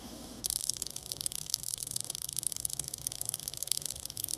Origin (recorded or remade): remade